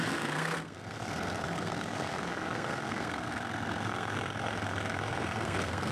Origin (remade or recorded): remade